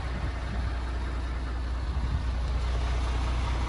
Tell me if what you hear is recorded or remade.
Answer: recorded